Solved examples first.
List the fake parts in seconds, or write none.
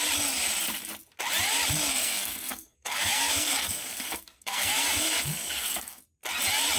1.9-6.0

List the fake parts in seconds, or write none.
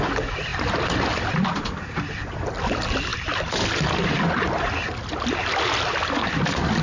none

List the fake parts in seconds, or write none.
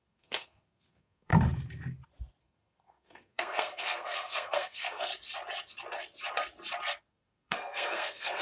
0.0-1.3; 2.4-5.1; 7.1-8.4